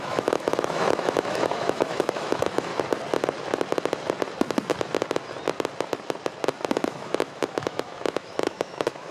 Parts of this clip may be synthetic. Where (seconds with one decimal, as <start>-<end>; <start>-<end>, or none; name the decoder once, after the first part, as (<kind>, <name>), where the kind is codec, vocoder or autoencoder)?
0.0-2.7 (autoencoder, DAC-VAE); 6.7-9.1